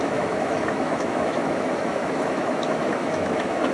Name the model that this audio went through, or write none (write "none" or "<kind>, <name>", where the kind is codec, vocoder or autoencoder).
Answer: autoencoder, DAC-VAE